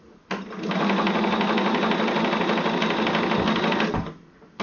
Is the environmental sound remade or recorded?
recorded